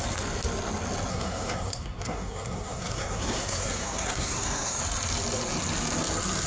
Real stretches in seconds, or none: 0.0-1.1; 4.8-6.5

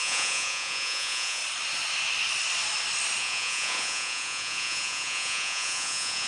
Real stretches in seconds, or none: 1.4-3.2

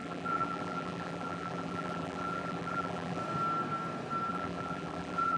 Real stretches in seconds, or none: 3.2-4.3

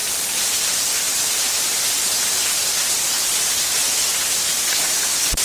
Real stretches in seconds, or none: 3.2-5.4

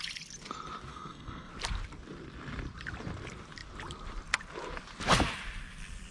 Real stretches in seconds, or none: 0.0-0.9; 1.5-6.1

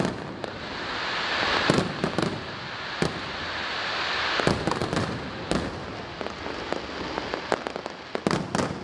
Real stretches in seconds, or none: 0.0-8.8